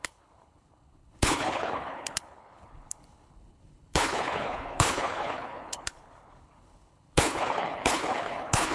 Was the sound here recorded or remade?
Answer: remade